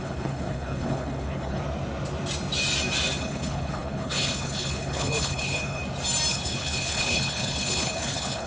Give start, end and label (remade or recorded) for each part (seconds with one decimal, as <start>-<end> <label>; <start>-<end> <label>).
0.0-1.6 remade; 1.6-3.2 recorded; 3.2-5.8 remade; 5.8-6.3 recorded; 6.3-8.5 remade